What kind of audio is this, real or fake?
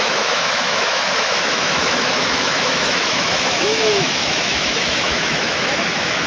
fake